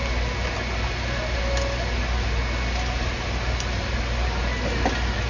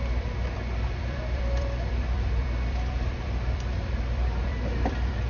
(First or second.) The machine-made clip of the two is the second